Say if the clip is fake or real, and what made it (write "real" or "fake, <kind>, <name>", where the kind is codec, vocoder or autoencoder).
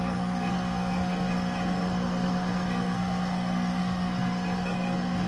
fake, codec, SNAC